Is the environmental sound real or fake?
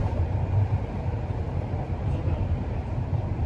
fake